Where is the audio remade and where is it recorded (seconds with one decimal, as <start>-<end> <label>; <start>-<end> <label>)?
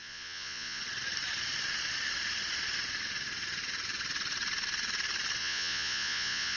0.0-0.8 remade; 0.8-5.4 recorded; 5.4-6.6 remade